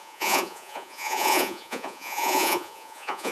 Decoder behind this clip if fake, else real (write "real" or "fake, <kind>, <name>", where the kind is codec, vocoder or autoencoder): fake, vocoder, Vocos